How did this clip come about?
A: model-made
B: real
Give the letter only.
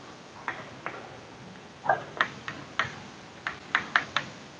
B